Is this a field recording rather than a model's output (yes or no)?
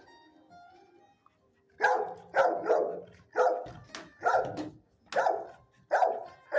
yes